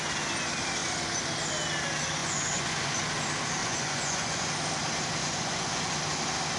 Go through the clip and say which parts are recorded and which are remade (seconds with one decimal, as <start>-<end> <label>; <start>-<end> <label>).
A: 0.0-2.2 recorded; 2.2-3.0 remade; 3.0-3.6 recorded; 3.6-4.5 remade; 4.5-5.2 recorded; 5.2-5.9 remade; 5.9-6.6 recorded